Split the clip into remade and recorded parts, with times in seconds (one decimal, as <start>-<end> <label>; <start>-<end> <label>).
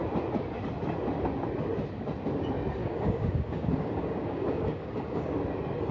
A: 0.0-2.8 recorded; 2.8-5.3 remade; 5.3-5.9 recorded